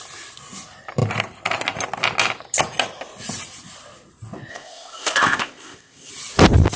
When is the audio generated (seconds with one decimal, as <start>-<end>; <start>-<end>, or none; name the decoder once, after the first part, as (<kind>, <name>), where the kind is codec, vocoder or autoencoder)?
4.5-6.1 (codec, ZipCodec)